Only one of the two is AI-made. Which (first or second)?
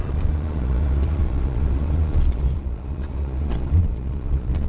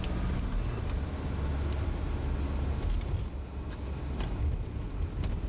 first